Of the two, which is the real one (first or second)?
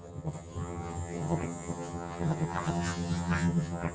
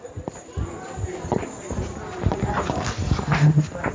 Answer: second